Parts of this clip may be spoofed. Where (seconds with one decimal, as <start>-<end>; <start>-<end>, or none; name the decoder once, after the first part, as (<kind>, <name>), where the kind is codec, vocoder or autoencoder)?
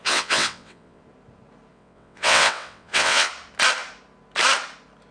0.0-1.0 (vocoder, WaveNeXt); 1.7-3.3